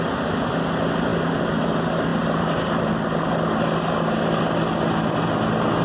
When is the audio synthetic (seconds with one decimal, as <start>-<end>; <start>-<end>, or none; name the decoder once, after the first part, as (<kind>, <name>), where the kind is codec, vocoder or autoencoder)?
none